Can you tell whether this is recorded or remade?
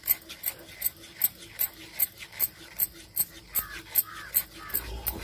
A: recorded